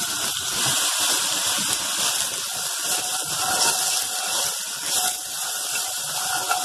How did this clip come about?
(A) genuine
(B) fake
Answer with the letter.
A